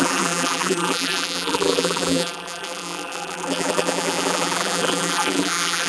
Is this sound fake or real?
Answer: fake